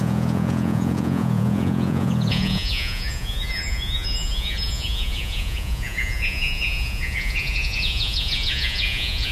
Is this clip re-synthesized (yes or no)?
yes